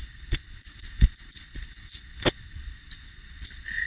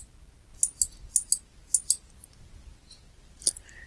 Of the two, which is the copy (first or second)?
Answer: first